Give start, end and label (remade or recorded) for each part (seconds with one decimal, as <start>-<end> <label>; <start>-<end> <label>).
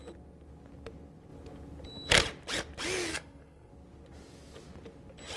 0.0-3.1 recorded; 3.1-3.7 remade; 3.7-5.4 recorded